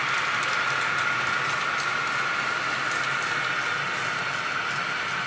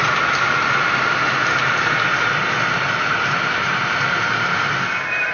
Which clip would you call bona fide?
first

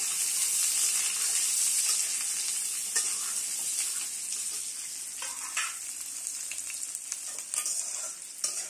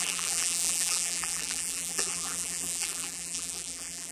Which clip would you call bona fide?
first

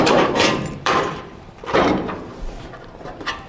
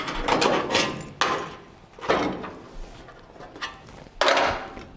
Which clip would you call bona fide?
second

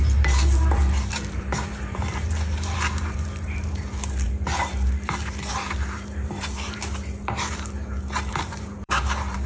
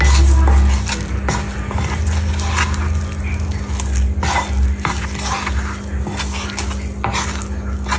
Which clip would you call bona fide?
second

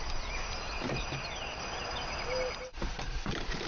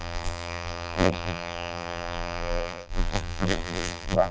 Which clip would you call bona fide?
first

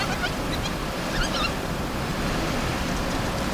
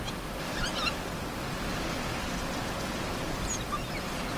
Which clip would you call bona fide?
second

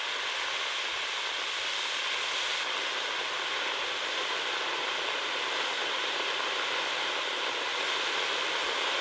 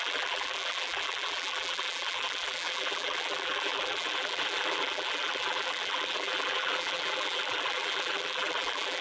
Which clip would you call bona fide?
first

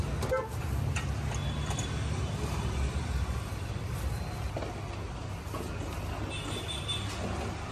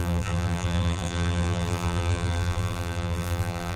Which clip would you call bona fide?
first